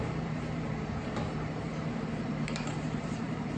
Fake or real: fake